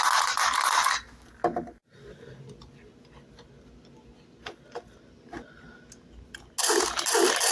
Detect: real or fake real